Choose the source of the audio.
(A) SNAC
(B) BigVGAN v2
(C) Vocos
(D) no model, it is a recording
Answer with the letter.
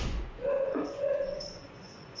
C